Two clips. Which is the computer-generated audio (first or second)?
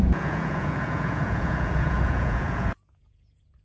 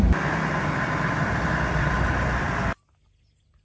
first